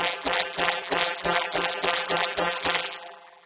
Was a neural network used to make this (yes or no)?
yes